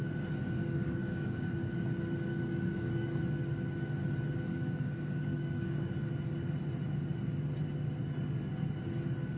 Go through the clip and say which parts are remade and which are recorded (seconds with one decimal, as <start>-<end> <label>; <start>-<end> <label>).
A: 0.0-0.6 recorded; 0.6-1.7 remade; 1.7-2.3 recorded; 2.3-3.2 remade; 3.2-4.5 recorded; 4.5-5.9 remade; 5.9-9.4 recorded

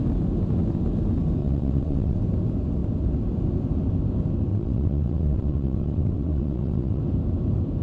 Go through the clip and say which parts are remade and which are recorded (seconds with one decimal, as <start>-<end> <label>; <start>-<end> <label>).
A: 0.0-1.4 recorded; 1.4-2.2 remade; 2.2-4.5 recorded; 4.5-7.0 remade; 7.0-7.8 recorded